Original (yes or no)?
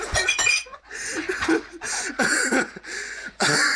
no